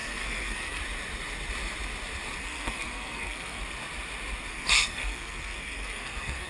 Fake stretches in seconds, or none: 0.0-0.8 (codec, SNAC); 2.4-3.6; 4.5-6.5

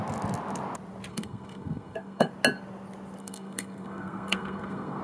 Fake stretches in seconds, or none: 1.1-2.3 (codec, SNAC); 3.2-5.0

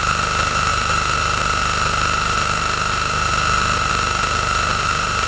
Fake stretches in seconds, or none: none

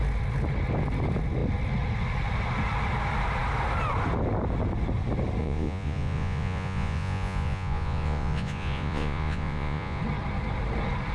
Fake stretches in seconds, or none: 5.4-10.0 (vocoder, Vocos)

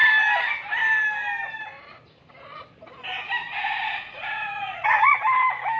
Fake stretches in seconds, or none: 3.4-5.2 (vocoder, Vocos)

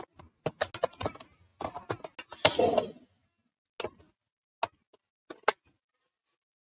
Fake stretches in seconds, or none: none

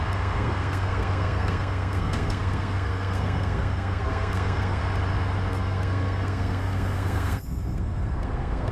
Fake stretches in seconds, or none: 0.0-4.8 (codec, SNAC); 5.5-8.7